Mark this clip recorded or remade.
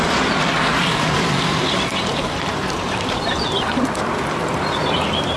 remade